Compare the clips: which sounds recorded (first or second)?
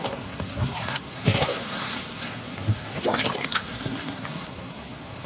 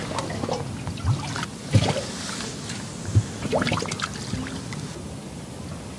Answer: second